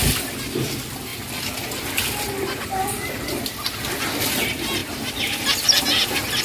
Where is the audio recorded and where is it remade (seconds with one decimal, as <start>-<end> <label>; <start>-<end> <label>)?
0.0-1.1 recorded; 1.1-3.4 remade; 3.4-4.8 recorded; 4.8-5.4 remade; 5.4-6.4 recorded

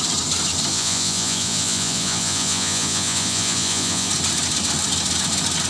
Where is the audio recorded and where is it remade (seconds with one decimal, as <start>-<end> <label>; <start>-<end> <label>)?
0.0-0.7 recorded; 0.7-4.1 remade; 4.1-5.7 recorded

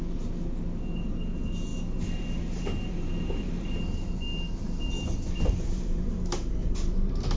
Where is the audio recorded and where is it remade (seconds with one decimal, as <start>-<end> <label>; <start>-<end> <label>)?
0.0-1.7 recorded; 1.7-6.1 remade; 6.1-6.6 recorded; 6.6-7.4 remade

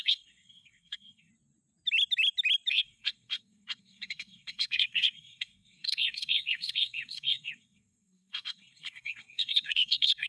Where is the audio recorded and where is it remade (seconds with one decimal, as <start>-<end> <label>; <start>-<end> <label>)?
0.0-1.3 remade; 1.3-2.7 recorded; 2.7-10.3 remade

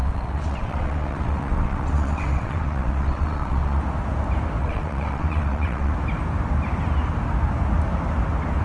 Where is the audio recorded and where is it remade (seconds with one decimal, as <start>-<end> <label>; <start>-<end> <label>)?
0.0-3.8 remade; 3.8-4.6 recorded; 4.6-5.9 remade; 5.9-8.6 recorded

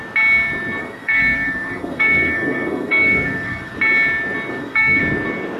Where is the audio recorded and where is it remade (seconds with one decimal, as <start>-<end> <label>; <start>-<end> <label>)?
0.0-0.8 recorded; 0.8-3.7 remade; 3.7-4.5 recorded; 4.5-5.0 remade; 5.0-5.6 recorded

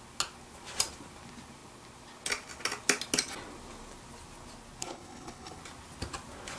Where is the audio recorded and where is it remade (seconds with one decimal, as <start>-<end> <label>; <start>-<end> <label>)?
0.0-4.8 recorded; 4.8-5.6 remade; 5.6-6.6 recorded